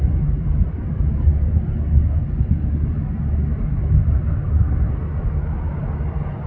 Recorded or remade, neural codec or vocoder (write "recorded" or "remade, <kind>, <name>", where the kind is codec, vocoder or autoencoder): recorded